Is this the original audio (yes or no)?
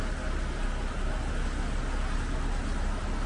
yes